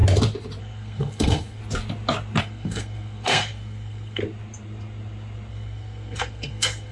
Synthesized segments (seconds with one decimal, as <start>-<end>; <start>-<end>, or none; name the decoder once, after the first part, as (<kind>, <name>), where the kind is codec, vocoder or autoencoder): 0.6-1.6 (codec, SNAC); 2.4-4.2; 5.5-6.9